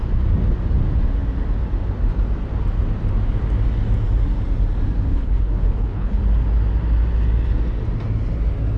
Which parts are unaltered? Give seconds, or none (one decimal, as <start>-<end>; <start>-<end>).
0.0-5.1; 6.2-8.8